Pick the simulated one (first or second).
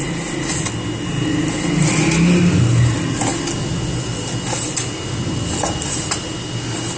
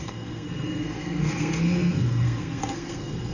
second